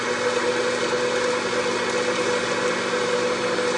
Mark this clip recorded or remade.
recorded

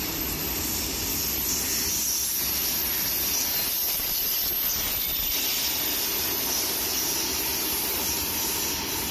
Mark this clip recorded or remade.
recorded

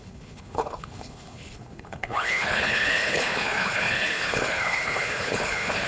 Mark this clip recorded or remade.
remade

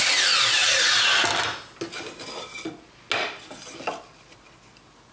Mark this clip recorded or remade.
recorded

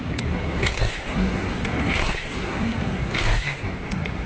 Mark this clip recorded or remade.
remade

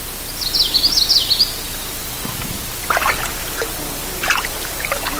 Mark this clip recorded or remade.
recorded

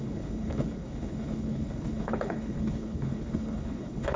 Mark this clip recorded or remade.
remade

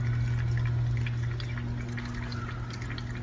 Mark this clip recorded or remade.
recorded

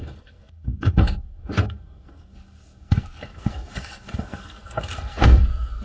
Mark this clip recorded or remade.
remade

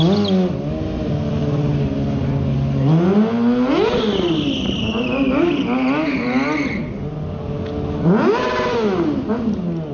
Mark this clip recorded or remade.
recorded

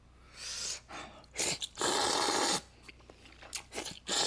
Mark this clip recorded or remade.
recorded